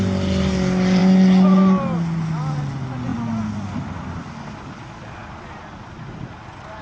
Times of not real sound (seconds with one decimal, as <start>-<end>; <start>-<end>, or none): none